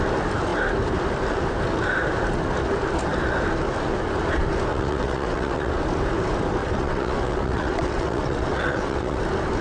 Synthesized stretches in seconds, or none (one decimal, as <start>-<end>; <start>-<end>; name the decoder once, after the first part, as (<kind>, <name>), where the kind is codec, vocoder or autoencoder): 4.7-5.8 (vocoder, WaveNeXt); 6.6-9.2